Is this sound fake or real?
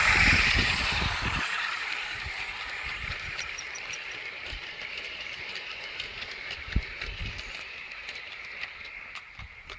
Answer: fake